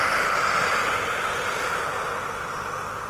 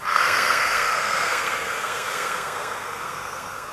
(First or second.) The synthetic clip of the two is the second